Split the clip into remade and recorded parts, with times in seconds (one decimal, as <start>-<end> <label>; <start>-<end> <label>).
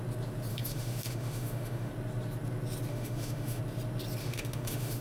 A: 0.0-0.5 recorded; 0.5-1.9 remade; 1.9-2.9 recorded; 2.9-3.6 remade; 3.6-4.2 recorded; 4.2-5.0 remade